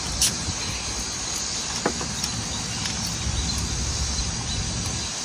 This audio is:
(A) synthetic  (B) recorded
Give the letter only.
B